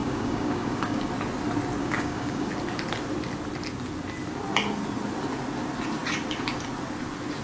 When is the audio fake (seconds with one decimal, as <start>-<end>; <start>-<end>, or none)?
0.0-1.1; 1.8-2.5

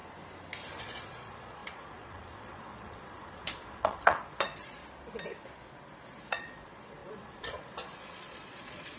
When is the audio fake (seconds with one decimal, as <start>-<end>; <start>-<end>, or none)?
0.8-4.8; 6.3-9.0

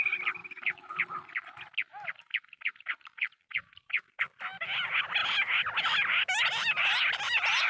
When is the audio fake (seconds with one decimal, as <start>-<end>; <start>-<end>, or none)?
0.4-0.9; 1.9-4.2

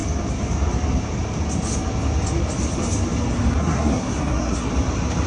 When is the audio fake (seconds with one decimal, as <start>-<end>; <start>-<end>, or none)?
3.6-4.7

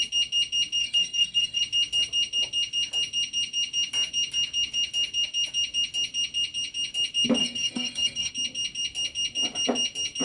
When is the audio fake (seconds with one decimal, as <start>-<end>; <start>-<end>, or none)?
0.8-1.6; 7.4-8.3